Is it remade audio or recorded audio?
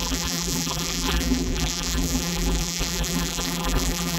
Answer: remade